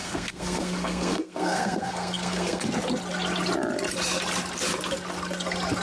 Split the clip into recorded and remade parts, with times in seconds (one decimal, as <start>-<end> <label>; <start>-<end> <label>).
0.0-2.6 remade; 2.6-5.8 recorded